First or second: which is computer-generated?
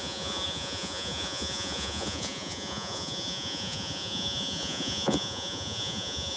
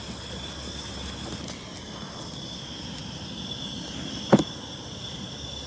first